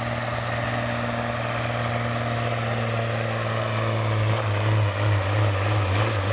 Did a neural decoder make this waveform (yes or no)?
no